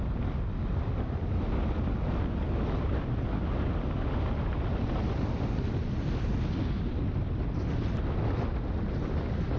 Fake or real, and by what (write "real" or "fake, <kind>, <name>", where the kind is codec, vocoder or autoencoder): real